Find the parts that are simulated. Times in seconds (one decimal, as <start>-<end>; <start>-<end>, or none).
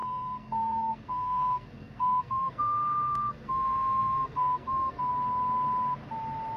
0.0-5.1